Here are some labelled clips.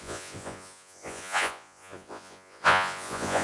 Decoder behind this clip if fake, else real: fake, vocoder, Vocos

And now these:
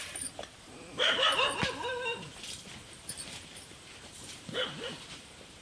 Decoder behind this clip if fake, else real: fake, vocoder, BigVGAN v2